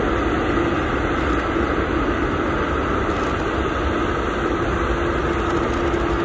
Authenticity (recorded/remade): recorded